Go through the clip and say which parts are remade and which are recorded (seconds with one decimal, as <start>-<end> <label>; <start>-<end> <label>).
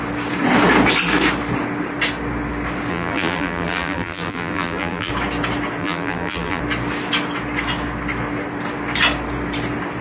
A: 0.0-2.9 recorded; 2.9-5.1 remade; 5.1-5.8 recorded; 5.8-6.6 remade; 6.6-10.0 recorded